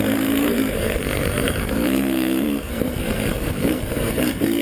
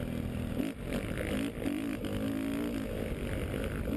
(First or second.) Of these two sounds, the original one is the second